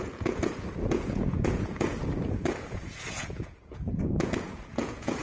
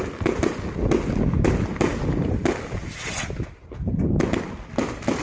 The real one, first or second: second